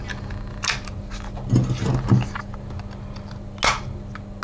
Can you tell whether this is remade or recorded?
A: recorded